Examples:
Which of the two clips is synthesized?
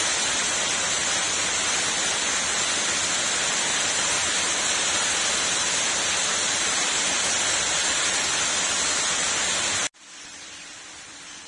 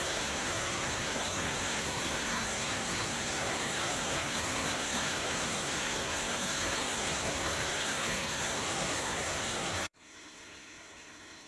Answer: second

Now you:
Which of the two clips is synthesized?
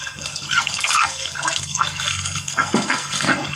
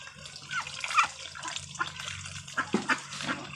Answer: first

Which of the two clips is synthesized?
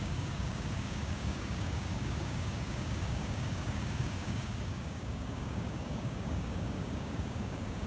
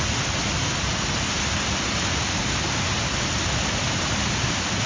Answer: first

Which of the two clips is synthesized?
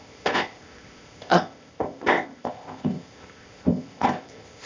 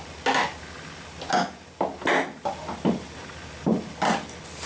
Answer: first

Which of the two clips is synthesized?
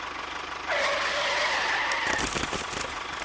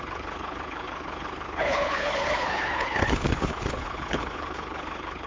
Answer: second